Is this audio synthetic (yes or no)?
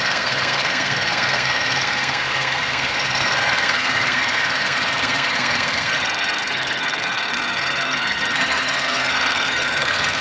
yes